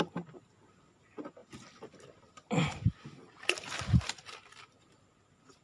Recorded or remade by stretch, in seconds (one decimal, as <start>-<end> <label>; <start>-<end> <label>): 0.0-5.6 recorded